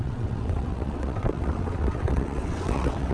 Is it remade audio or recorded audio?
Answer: remade